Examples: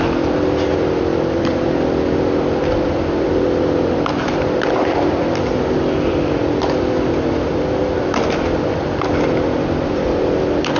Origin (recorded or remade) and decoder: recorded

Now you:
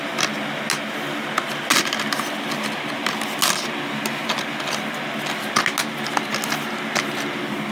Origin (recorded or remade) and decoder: recorded